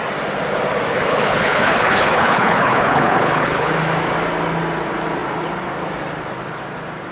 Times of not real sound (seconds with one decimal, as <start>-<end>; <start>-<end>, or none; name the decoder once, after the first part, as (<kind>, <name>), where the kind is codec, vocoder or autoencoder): 0.9-3.7 (codec, HILCodec)